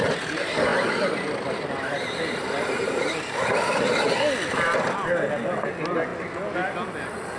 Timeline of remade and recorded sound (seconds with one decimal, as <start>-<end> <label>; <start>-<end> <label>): 0.0-0.7 recorded; 0.7-5.1 remade; 5.1-7.4 recorded